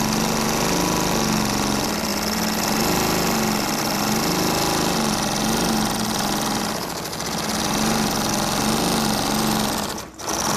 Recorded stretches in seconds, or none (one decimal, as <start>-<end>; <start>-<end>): 0.0-10.6